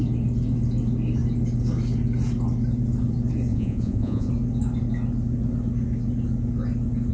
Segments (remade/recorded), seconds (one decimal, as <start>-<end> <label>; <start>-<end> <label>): 0.0-3.5 recorded; 3.5-4.3 remade; 4.3-7.1 recorded